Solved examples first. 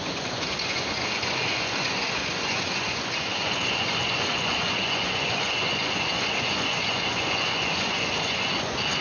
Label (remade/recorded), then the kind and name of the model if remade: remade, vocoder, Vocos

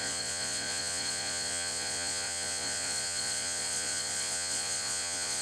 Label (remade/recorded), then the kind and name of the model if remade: remade, vocoder, Vocos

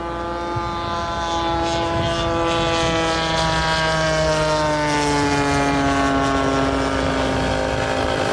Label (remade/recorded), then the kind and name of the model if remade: recorded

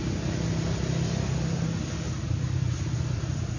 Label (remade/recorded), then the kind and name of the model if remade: recorded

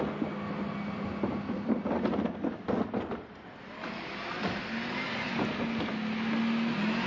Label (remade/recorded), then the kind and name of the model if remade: recorded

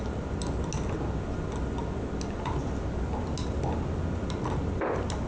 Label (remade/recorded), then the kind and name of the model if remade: recorded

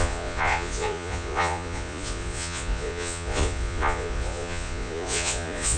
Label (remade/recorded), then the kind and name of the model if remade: remade, vocoder, Vocos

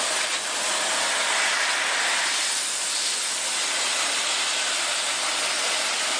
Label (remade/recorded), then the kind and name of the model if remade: recorded